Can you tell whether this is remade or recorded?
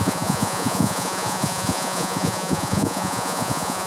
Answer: remade